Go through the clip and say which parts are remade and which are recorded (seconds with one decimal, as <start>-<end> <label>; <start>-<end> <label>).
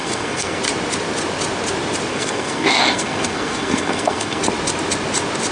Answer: 0.0-0.6 remade; 0.6-2.1 recorded; 2.1-4.4 remade; 4.4-5.5 recorded